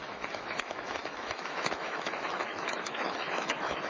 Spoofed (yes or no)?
yes